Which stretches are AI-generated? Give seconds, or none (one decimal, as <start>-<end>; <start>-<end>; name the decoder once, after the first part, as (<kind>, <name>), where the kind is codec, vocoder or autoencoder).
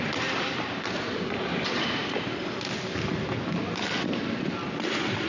none